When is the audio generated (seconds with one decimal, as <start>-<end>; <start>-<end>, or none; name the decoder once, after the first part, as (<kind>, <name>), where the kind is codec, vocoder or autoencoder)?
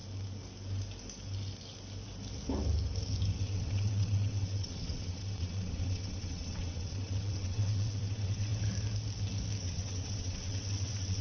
3.4-8.5 (vocoder, WaveNeXt); 9.6-11.2